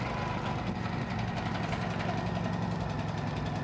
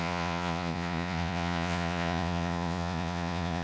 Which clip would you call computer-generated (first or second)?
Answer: second